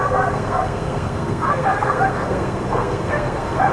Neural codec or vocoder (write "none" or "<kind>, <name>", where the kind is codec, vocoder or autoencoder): codec, SNAC